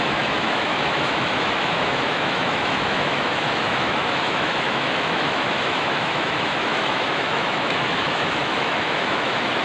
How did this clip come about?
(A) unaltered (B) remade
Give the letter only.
B